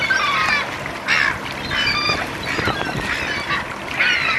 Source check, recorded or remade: recorded